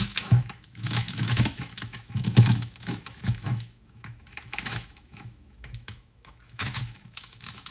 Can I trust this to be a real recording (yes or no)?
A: no